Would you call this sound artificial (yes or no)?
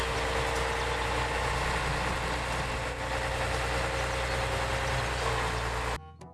no